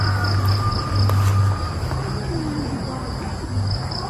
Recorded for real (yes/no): yes